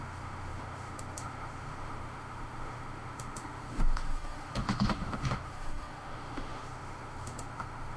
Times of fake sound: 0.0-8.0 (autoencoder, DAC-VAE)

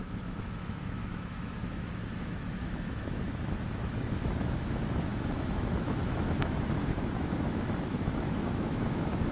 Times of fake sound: 0.0-9.3 (autoencoder, DAC-VAE)

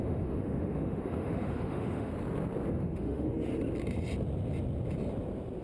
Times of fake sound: 0.0-2.1 (autoencoder, DAC-VAE); 2.7-3.5